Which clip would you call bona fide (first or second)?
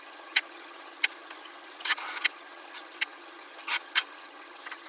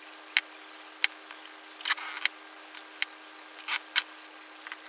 second